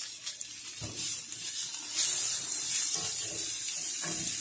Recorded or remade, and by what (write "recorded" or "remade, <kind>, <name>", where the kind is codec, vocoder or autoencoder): recorded